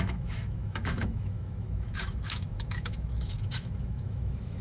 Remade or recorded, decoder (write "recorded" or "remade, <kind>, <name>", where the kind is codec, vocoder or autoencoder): remade, autoencoder, DAC-VAE